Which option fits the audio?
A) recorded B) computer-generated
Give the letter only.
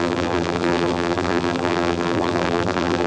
B